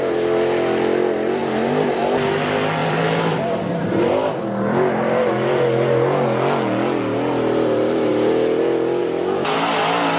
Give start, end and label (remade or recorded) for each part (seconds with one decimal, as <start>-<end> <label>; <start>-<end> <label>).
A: 0.0-1.4 recorded; 1.4-2.0 remade; 2.0-2.8 recorded; 2.8-5.3 remade; 5.3-10.2 recorded